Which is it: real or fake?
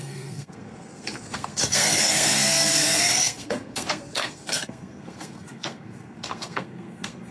fake